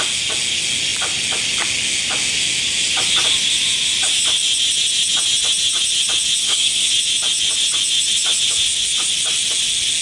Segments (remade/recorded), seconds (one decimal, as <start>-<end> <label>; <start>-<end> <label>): 0.0-6.4 recorded; 6.4-6.9 remade; 6.9-10.0 recorded